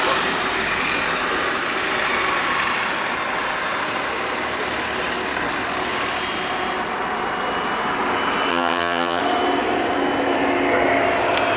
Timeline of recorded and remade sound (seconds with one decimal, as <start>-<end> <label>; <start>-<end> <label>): 0.0-8.5 recorded; 8.5-9.2 remade; 9.2-11.6 recorded